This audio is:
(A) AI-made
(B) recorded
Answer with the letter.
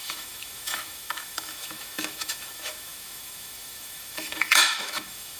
A